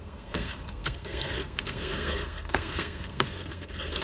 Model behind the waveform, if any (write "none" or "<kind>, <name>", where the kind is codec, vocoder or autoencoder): codec, SNAC